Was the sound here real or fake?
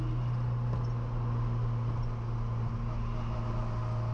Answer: real